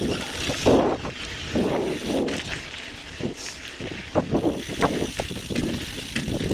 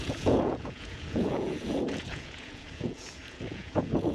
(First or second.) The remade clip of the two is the second